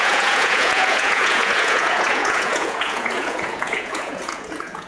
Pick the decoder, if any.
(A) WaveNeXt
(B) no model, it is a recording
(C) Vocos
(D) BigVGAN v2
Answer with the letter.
C